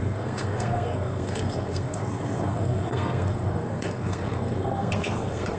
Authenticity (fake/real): fake